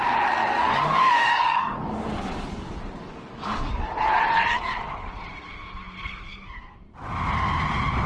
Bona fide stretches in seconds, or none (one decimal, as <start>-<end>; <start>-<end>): 0.0-0.4; 2.7-3.1; 3.9-8.1